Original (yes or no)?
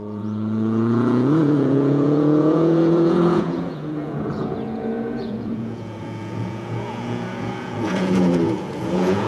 no